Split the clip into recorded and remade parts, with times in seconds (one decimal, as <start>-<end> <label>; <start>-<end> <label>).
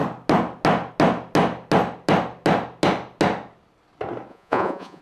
0.0-4.3 recorded; 4.3-5.0 remade